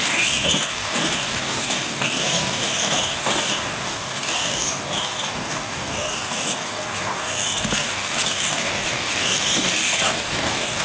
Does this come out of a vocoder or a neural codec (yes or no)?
yes